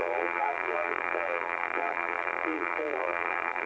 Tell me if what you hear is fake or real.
fake